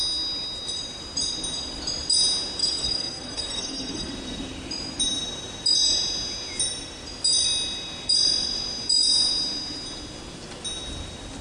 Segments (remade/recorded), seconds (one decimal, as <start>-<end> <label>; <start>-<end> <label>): 0.0-2.6 recorded; 2.6-4.1 remade; 4.1-11.4 recorded